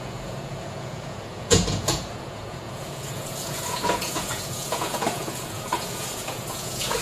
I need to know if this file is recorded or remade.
remade